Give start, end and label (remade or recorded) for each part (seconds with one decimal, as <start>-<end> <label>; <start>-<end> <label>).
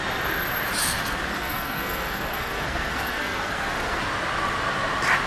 0.0-0.8 recorded; 0.8-4.0 remade; 4.0-5.3 recorded